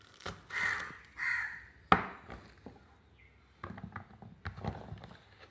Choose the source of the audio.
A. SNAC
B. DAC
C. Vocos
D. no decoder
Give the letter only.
D